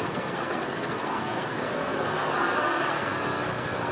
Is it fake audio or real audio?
fake